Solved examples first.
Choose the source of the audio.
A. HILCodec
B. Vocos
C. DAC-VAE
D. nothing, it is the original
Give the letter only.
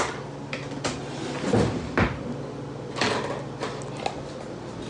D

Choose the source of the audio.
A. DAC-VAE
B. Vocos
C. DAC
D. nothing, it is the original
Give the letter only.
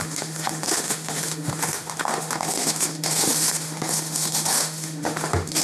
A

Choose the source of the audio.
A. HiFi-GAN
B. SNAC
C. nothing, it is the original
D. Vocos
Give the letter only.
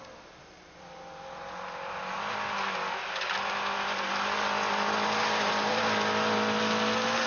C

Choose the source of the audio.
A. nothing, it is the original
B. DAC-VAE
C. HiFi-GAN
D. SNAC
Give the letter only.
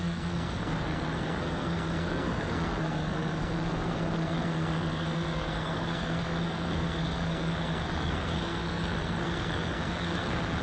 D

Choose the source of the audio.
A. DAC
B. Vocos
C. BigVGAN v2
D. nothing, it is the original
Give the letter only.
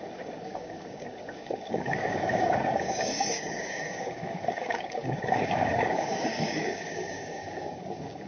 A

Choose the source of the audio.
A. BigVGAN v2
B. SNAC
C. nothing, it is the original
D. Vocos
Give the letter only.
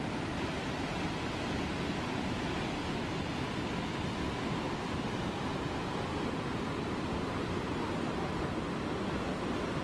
C